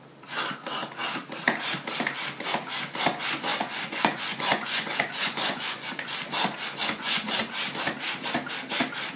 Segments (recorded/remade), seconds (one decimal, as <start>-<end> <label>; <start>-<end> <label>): 0.0-3.5 recorded; 3.5-5.9 remade; 5.9-6.8 recorded; 6.8-7.4 remade; 7.4-9.2 recorded